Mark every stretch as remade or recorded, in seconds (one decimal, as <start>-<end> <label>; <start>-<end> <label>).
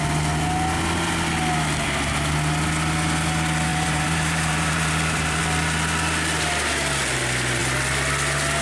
0.0-3.7 recorded; 3.7-5.4 remade; 5.4-8.6 recorded